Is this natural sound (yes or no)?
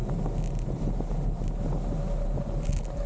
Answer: yes